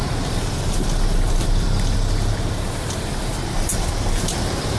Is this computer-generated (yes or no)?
yes